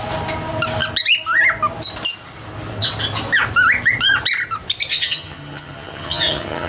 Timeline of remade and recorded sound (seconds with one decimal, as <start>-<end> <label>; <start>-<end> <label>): 0.0-4.9 recorded; 4.9-6.7 remade

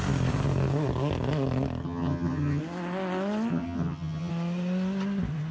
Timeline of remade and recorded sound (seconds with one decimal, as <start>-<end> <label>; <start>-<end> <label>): 0.0-1.8 recorded; 1.8-2.6 remade; 2.6-3.5 recorded; 3.5-4.3 remade; 4.3-5.5 recorded

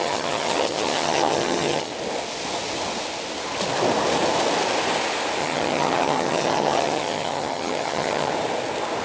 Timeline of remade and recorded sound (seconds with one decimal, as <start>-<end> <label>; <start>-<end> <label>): 0.0-1.9 remade; 1.9-5.4 recorded; 5.4-8.3 remade; 8.3-9.0 recorded